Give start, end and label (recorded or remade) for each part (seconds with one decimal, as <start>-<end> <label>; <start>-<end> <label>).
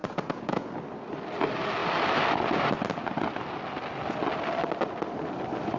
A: 0.0-0.7 remade; 0.7-5.8 recorded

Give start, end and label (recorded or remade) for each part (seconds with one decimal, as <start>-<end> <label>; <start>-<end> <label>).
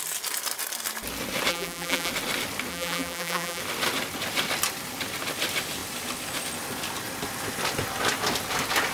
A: 0.0-1.5 recorded; 1.5-2.1 remade; 2.1-2.7 recorded; 2.7-3.6 remade; 3.6-8.9 recorded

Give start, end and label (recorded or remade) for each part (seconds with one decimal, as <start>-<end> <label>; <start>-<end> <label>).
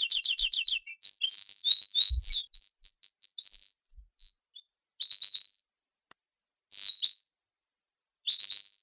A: 0.0-8.8 recorded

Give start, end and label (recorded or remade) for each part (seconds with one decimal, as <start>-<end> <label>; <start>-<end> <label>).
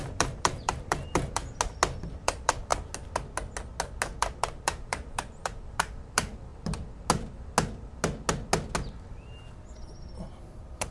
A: 0.0-1.4 remade; 1.4-2.0 recorded; 2.0-2.7 remade; 2.7-4.2 recorded; 4.2-6.5 remade; 6.5-10.2 recorded; 10.2-10.9 remade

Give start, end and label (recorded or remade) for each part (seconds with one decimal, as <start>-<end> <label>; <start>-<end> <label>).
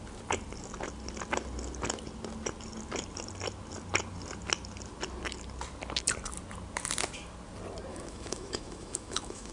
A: 0.0-7.9 recorded; 7.9-9.5 remade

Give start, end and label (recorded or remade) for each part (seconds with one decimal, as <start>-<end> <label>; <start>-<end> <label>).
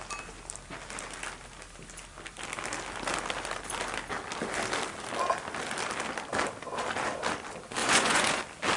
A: 0.0-7.8 recorded; 7.8-8.4 remade; 8.4-8.8 recorded